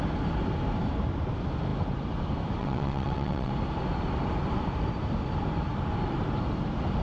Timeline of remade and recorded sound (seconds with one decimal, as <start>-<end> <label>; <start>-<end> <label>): 0.0-2.6 recorded; 2.6-3.5 remade; 3.5-7.0 recorded